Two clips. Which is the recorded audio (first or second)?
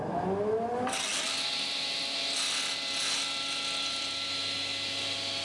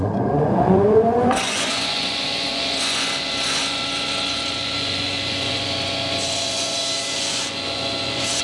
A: first